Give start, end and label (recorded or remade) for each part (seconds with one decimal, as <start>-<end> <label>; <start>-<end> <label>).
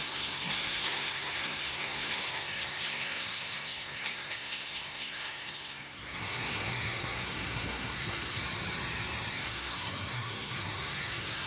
0.0-8.4 remade; 8.4-9.3 recorded; 9.3-11.5 remade